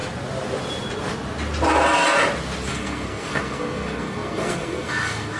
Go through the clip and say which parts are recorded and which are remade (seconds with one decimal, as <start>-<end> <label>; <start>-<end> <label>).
0.0-2.7 recorded; 2.7-5.4 remade